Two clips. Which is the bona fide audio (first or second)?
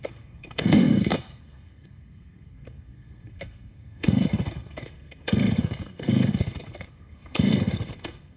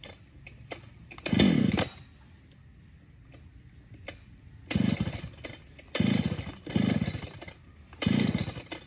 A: second